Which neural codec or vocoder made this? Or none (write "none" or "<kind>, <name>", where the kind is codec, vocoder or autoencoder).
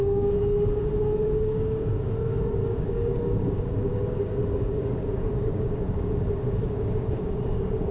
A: codec, DAC